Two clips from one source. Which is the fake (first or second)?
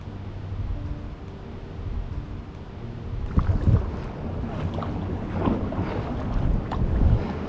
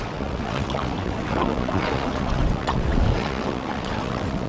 second